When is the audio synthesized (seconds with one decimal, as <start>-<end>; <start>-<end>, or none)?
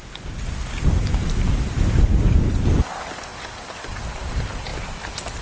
none